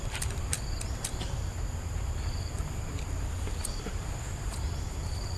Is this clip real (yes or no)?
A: no